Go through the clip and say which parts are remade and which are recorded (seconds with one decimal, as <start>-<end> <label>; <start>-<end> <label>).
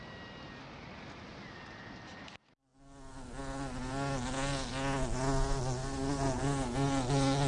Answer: 0.0-7.5 recorded